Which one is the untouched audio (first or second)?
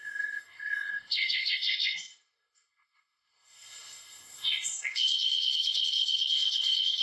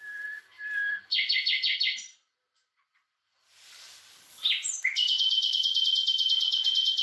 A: second